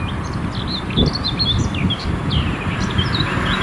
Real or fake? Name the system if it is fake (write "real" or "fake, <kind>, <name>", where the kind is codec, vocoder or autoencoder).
real